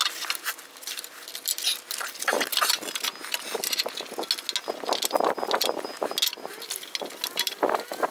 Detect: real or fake real